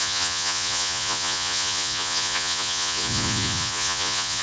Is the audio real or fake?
fake